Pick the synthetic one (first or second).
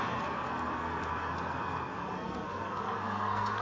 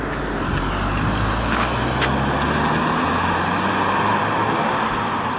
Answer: first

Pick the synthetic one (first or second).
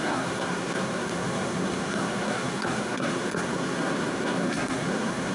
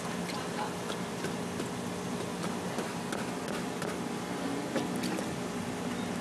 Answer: first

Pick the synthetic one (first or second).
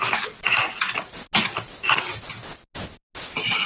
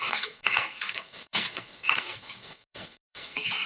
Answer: second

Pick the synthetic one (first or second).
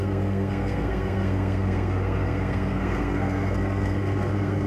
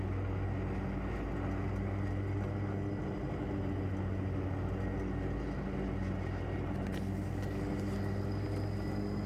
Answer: first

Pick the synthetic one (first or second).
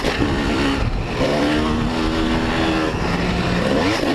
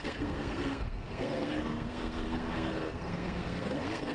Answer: second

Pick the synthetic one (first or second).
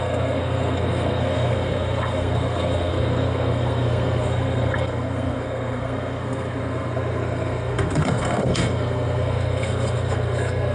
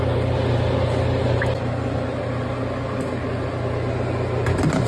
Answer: first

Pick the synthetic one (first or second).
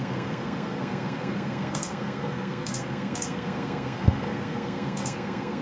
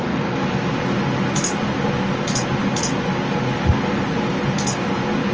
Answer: first